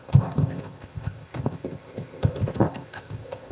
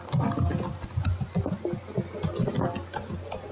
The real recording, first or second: second